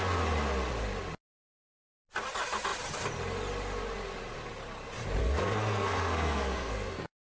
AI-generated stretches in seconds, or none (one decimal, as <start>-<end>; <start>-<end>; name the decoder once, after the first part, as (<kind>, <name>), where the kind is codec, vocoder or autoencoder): 5.2-7.4 (codec, SNAC)